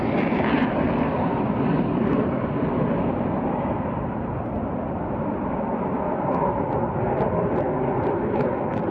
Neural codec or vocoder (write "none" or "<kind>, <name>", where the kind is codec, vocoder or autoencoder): none